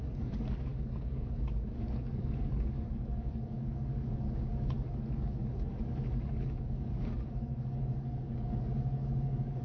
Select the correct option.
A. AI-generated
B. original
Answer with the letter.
A